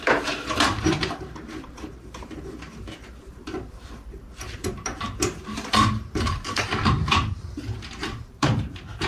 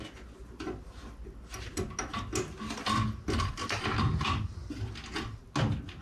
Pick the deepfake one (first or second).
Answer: first